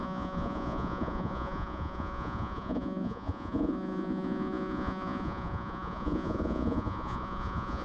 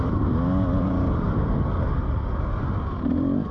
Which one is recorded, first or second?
second